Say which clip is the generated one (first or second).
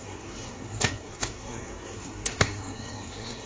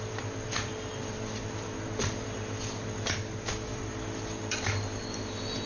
first